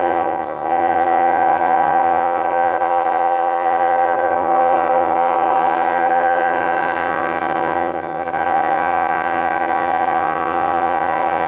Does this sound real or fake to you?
fake